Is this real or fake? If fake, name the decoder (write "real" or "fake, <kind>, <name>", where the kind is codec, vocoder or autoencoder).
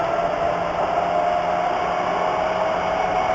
real